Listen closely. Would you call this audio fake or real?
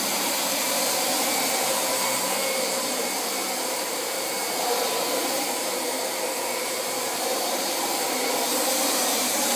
fake